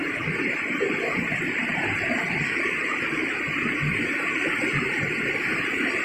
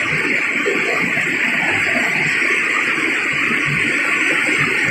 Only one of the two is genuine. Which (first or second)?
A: second